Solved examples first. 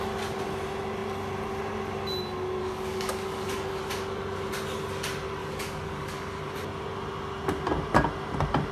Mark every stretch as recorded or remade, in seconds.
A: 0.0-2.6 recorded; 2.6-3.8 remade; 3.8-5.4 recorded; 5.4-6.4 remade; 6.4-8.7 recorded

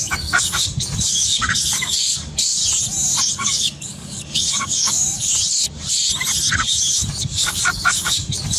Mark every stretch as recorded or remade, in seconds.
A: 0.0-2.6 remade; 2.6-3.3 recorded; 3.3-5.3 remade; 5.3-6.9 recorded; 6.9-8.6 remade

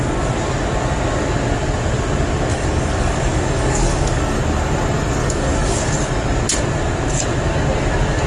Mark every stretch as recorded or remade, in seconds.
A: 0.0-2.5 recorded; 2.5-4.4 remade; 4.4-5.2 recorded; 5.2-5.9 remade; 5.9-8.3 recorded

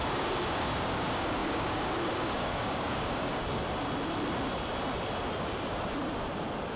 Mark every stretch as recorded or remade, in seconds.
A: 0.0-3.3 remade; 3.3-6.8 recorded

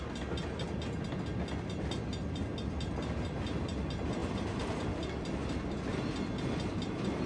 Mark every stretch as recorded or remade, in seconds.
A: 0.0-4.2 recorded; 4.2-4.7 remade; 4.7-7.3 recorded

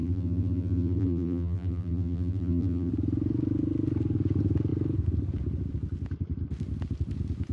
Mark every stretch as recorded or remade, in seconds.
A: 0.0-2.9 remade; 2.9-7.5 recorded

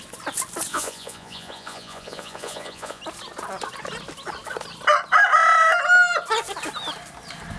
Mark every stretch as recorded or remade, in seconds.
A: 0.0-0.7 recorded; 0.7-3.0 remade; 3.0-7.6 recorded